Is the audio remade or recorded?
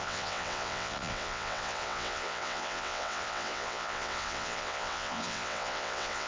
remade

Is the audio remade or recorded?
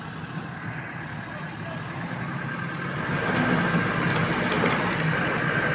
recorded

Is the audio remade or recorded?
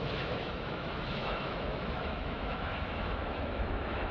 remade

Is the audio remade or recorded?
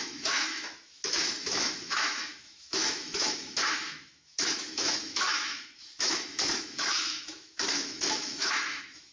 remade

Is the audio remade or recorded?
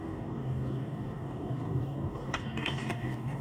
remade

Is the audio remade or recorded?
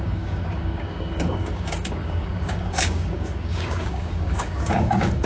remade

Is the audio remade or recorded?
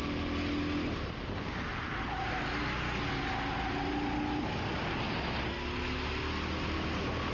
recorded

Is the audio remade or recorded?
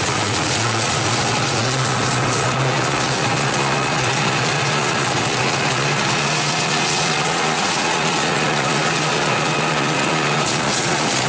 remade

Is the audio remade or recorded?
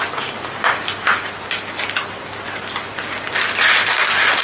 recorded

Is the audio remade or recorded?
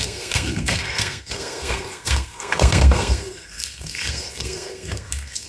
remade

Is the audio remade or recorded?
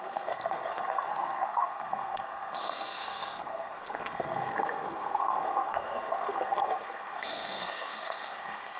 remade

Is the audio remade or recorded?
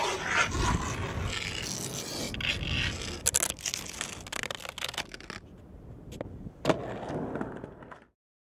recorded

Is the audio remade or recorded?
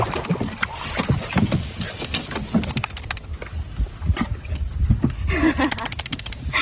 recorded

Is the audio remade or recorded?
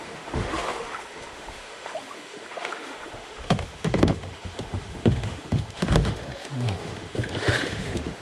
remade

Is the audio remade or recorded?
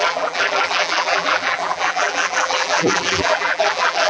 remade